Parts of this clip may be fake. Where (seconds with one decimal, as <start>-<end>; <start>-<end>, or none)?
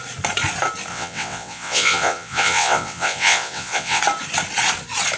0.9-4.0